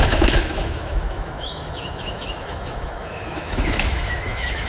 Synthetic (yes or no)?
yes